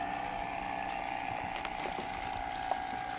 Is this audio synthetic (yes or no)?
no